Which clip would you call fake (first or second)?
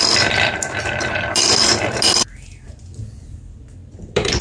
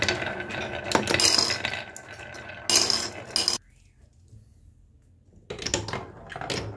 first